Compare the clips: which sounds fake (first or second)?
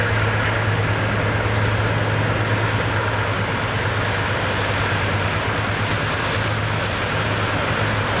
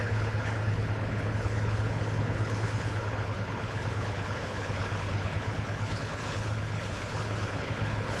second